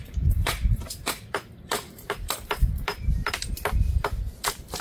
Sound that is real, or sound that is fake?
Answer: fake